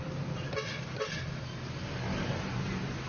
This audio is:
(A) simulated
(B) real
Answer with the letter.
B